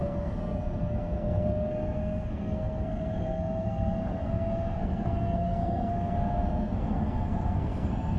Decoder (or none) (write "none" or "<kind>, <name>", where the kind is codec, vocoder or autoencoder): codec, SNAC